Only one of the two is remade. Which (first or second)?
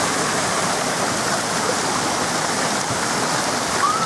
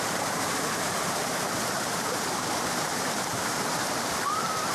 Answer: second